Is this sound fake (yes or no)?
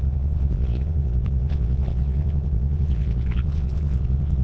yes